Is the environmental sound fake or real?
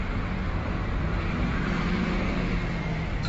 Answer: fake